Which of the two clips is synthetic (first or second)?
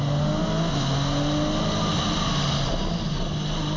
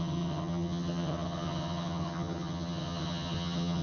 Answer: second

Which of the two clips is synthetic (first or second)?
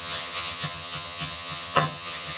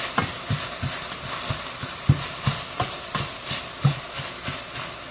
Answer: first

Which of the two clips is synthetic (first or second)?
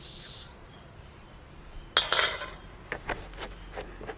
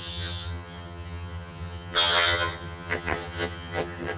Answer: second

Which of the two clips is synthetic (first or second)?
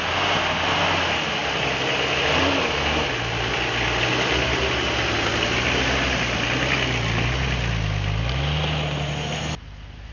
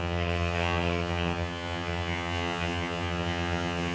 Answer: second